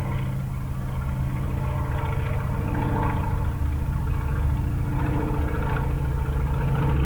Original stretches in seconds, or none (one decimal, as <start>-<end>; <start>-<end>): 0.0-7.0